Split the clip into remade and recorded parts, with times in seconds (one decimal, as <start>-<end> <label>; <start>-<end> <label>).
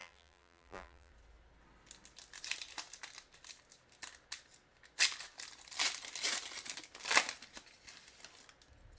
0.0-1.1 remade; 1.1-9.0 recorded